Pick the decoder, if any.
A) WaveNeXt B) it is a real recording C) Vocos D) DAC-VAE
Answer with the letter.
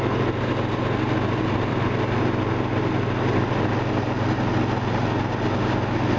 B